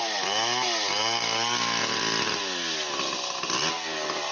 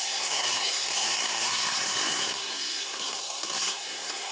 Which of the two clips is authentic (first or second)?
first